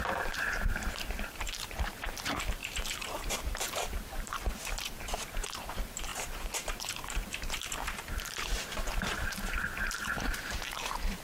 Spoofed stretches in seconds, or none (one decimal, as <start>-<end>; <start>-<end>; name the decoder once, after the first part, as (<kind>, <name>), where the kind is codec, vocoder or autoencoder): 0.0-11.2 (vocoder, BigVGAN v2)